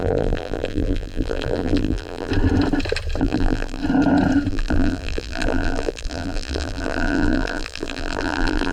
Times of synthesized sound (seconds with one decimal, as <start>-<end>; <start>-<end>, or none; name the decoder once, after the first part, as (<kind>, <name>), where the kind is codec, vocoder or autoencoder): 0.0-2.3 (vocoder, BigVGAN v2); 3.2-3.8; 4.5-8.7